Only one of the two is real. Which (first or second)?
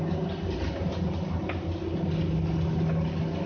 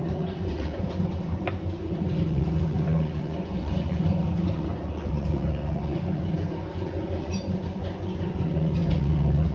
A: first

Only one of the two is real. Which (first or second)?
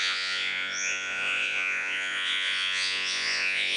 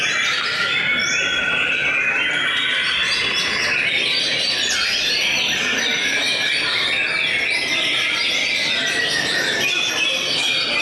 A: second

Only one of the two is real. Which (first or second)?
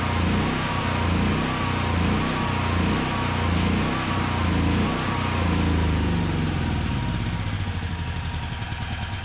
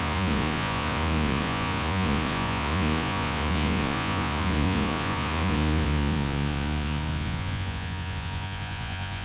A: first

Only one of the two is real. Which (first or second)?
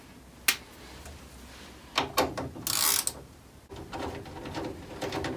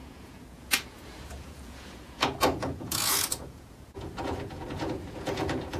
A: first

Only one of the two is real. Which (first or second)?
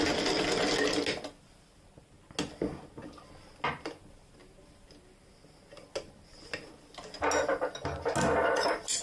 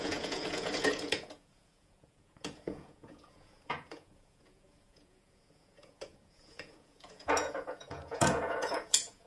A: first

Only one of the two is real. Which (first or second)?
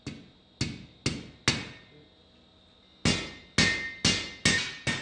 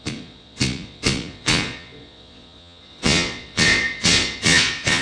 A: first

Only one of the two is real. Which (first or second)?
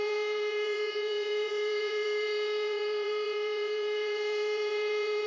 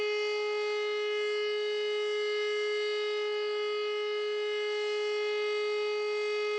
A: second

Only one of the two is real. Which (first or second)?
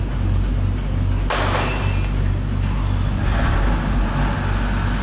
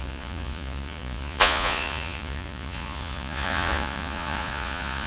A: first